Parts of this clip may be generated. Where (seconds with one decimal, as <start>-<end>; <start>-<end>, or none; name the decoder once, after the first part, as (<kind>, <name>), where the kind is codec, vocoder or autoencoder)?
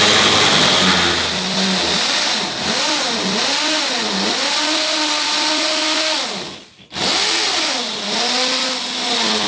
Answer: none